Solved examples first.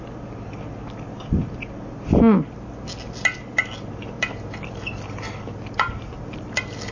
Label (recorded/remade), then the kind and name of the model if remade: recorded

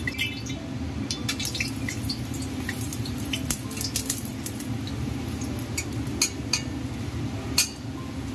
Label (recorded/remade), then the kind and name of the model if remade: recorded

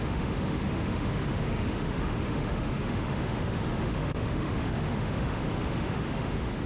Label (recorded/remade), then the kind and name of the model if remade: remade, autoencoder, DAC-VAE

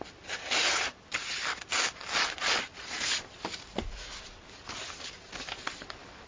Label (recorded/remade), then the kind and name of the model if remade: recorded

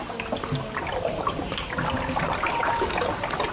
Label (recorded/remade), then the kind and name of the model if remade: recorded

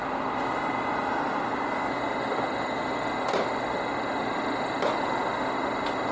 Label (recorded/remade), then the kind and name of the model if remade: recorded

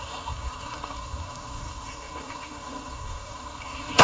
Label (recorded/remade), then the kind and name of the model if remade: remade, codec, SNAC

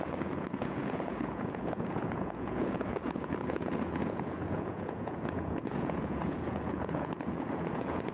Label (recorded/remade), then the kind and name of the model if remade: remade, vocoder, Vocos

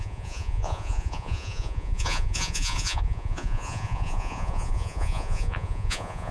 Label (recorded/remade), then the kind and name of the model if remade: remade, vocoder, Vocos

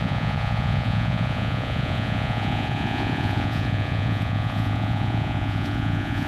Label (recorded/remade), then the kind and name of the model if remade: remade, vocoder, Vocos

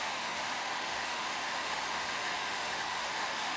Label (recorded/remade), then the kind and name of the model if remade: remade, autoencoder, DAC-VAE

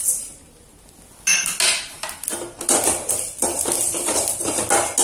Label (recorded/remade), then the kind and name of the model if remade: recorded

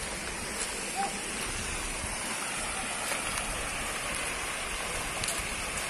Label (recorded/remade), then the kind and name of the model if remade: recorded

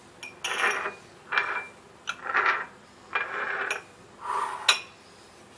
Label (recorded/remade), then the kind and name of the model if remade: recorded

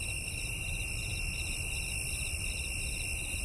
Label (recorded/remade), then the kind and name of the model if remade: remade, vocoder, BigVGAN v2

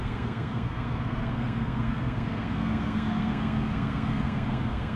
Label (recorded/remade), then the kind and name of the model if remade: remade, codec, SNAC